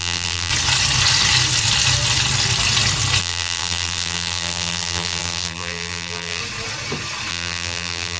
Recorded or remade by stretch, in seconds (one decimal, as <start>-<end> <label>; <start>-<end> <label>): 0.0-0.5 remade; 0.5-3.2 recorded; 3.2-6.4 remade; 6.4-7.3 recorded; 7.3-8.2 remade